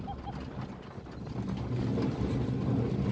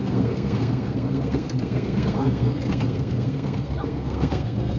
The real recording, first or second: first